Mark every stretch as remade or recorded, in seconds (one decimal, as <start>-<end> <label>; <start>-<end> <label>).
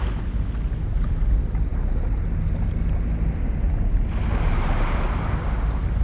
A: 0.0-6.0 recorded